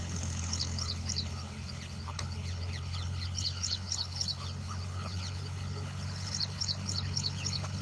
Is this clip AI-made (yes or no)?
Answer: yes